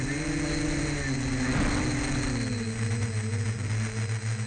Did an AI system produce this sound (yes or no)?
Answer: no